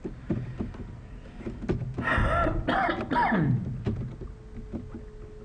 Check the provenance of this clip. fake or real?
real